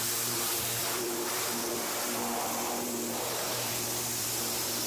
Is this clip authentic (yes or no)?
no